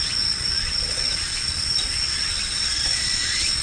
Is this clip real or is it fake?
fake